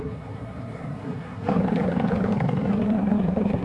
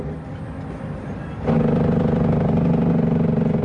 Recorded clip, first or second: second